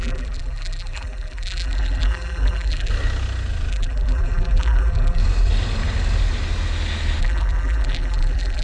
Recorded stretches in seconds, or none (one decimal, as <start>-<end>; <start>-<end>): 2.9-3.7; 5.2-7.2